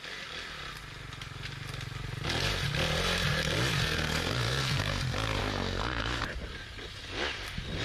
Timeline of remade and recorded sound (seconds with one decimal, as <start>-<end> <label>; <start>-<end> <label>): 0.0-3.8 recorded; 3.8-5.0 remade; 5.0-5.4 recorded; 5.4-6.2 remade; 6.2-7.8 recorded